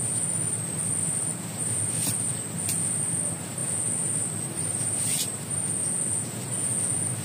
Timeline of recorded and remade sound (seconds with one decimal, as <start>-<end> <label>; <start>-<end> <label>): 0.0-7.2 recorded

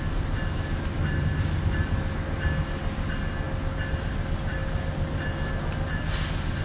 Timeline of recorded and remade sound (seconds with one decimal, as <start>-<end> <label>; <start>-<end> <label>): 0.0-6.6 recorded

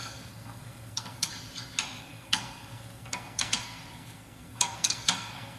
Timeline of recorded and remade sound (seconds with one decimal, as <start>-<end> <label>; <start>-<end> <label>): 0.0-1.3 remade; 1.3-2.0 recorded; 2.0-5.6 remade

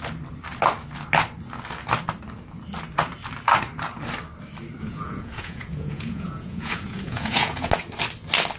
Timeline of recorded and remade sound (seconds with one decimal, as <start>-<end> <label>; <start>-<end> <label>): 0.0-4.8 recorded; 4.8-7.7 remade; 7.7-8.6 recorded

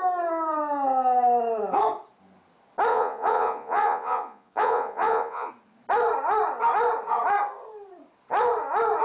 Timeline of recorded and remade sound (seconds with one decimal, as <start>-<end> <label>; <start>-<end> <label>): 0.0-2.9 recorded; 2.9-5.5 remade; 5.5-9.0 recorded

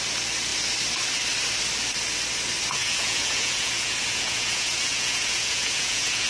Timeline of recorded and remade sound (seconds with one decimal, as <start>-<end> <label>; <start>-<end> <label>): 0.0-2.8 recorded; 2.8-6.3 remade

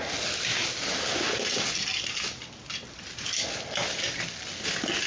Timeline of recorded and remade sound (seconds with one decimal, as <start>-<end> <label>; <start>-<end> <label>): 0.0-5.1 recorded